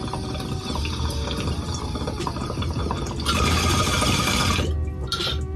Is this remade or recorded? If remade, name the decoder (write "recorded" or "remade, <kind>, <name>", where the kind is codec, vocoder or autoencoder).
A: recorded